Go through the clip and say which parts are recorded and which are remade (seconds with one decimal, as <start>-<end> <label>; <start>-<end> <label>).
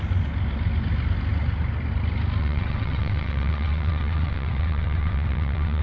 0.0-2.4 recorded; 2.4-5.8 remade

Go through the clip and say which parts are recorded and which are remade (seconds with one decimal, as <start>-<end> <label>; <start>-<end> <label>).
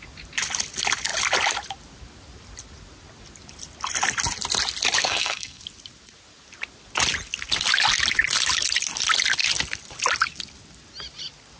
0.0-5.0 recorded; 5.0-5.6 remade; 5.6-11.6 recorded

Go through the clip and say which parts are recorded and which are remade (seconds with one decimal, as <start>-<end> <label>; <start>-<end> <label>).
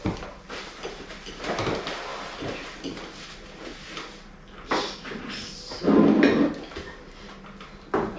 0.0-8.2 recorded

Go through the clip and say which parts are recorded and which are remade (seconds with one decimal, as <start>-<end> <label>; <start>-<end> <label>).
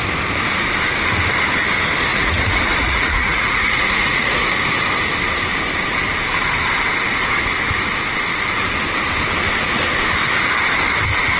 0.0-2.1 recorded; 2.1-4.5 remade; 4.5-11.4 recorded